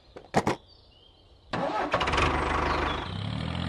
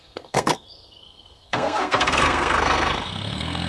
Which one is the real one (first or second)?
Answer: first